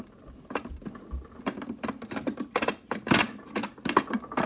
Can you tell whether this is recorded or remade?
recorded